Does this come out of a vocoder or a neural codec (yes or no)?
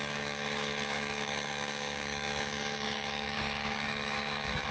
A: yes